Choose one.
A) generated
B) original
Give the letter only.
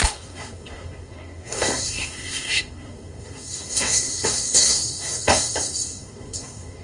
A